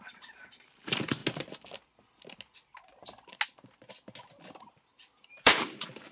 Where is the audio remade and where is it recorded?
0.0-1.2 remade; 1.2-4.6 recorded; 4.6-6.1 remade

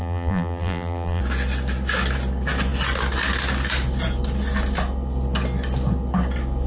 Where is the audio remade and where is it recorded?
0.0-1.2 remade; 1.2-6.7 recorded

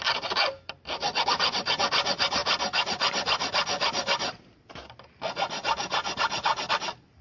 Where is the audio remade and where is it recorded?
0.0-2.4 remade; 2.4-6.7 recorded; 6.7-7.2 remade